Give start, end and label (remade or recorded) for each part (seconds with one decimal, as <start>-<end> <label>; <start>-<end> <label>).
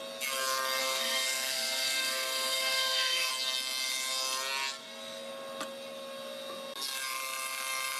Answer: 0.0-0.8 recorded; 0.8-3.3 remade; 3.3-4.8 recorded; 4.8-5.3 remade; 5.3-8.0 recorded